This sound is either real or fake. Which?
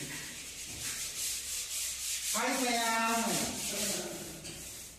fake